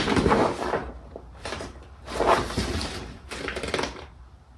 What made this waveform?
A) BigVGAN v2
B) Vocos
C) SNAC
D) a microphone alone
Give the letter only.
A